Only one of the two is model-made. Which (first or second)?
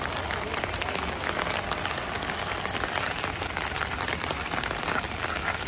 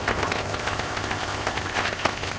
second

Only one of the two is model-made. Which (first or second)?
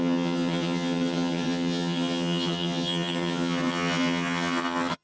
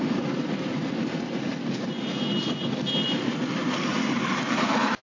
first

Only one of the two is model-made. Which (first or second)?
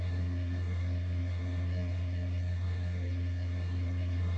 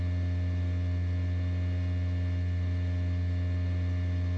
first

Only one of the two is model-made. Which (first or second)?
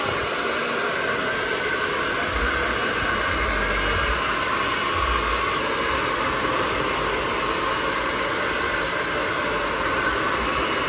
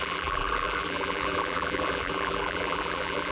second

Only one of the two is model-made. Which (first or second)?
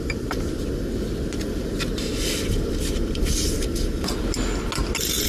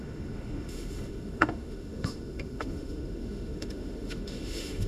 second